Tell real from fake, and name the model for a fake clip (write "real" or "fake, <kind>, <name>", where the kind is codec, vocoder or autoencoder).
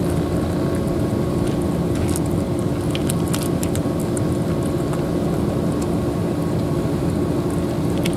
real